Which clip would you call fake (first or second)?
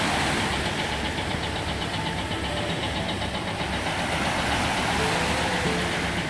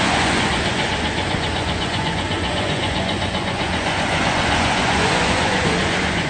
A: second